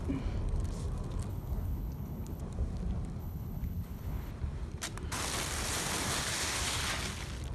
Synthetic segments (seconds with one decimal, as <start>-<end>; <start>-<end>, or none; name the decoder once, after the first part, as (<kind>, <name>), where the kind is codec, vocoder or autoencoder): 1.3-2.4 (codec, HILCodec); 3.2-4.3